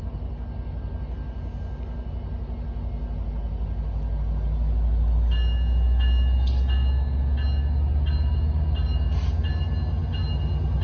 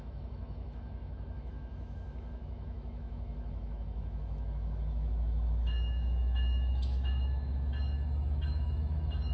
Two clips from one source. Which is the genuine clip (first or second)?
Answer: first